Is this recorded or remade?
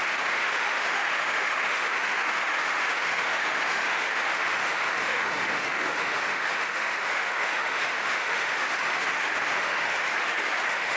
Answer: remade